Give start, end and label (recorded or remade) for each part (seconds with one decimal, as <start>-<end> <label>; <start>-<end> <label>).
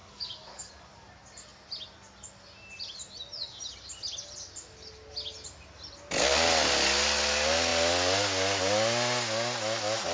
0.0-0.7 remade; 0.7-10.1 recorded